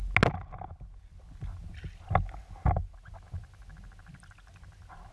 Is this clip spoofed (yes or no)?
no